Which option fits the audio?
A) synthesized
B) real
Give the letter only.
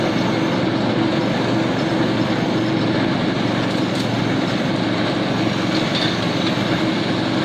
B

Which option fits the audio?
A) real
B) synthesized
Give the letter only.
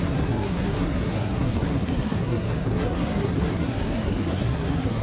B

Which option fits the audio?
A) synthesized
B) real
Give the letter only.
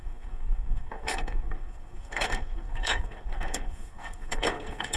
A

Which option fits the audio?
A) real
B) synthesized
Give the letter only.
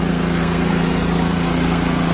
B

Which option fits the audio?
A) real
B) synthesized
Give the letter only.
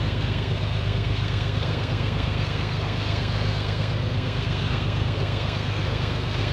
B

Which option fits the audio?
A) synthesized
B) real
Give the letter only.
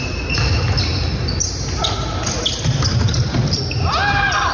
B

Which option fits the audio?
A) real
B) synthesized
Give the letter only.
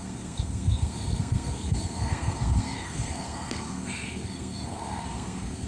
B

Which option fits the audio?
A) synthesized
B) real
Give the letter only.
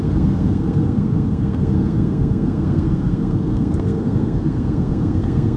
A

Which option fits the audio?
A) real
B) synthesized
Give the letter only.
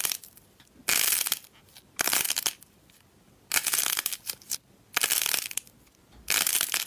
A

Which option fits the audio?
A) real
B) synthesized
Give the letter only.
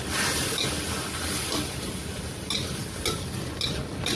A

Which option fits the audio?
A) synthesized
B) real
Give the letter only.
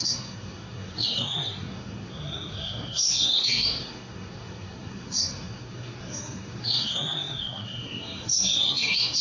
A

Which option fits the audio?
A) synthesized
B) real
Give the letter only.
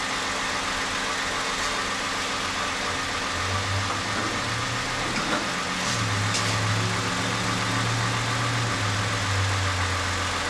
B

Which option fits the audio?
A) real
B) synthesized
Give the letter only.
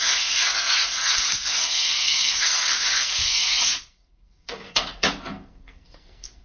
B